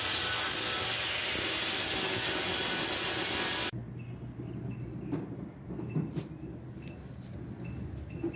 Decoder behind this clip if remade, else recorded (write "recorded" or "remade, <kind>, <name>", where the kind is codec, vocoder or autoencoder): recorded